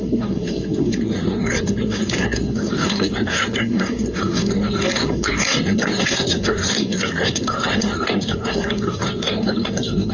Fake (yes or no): yes